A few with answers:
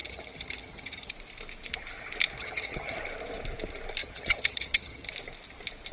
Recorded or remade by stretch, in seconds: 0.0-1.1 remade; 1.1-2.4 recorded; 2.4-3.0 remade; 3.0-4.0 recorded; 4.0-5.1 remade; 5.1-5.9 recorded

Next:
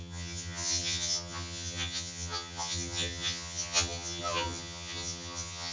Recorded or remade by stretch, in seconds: 0.0-5.7 remade

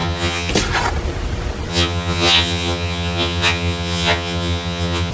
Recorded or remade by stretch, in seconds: 0.0-0.5 remade; 0.5-1.7 recorded; 1.7-5.1 remade

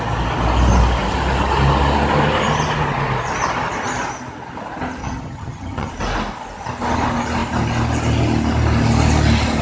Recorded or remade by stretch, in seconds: 0.0-5.0 recorded; 5.0-5.9 remade; 5.9-9.6 recorded

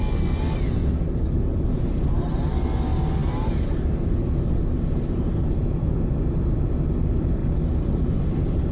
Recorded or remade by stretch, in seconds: 0.0-8.7 recorded

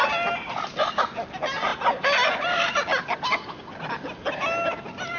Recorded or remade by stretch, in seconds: 0.0-5.2 recorded

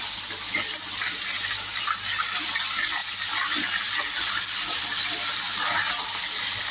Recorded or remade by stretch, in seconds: 0.0-6.7 recorded

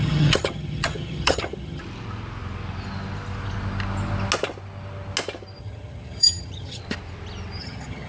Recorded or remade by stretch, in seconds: 0.0-1.8 remade; 1.8-5.6 recorded; 5.6-6.8 remade; 6.8-7.6 recorded; 7.6-8.1 remade